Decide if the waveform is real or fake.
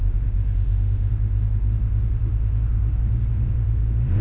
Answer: fake